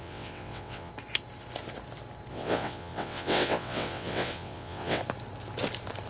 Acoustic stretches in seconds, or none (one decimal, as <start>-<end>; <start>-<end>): 0.9-2.3; 5.0-6.1